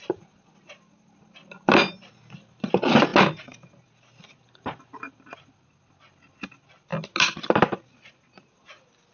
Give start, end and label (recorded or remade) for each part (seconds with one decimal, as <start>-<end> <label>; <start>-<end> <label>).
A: 0.0-9.1 recorded